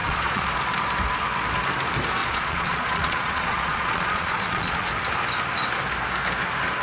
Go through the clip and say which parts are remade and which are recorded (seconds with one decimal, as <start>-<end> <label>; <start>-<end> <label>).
0.0-0.5 remade; 0.5-2.2 recorded; 2.2-4.9 remade; 4.9-6.8 recorded